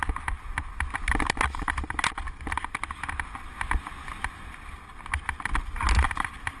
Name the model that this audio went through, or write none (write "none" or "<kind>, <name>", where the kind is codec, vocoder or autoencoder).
none